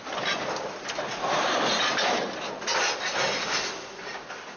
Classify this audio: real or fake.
real